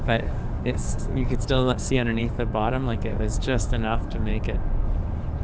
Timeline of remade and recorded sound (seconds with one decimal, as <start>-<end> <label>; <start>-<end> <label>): 0.0-4.3 remade; 4.3-5.4 recorded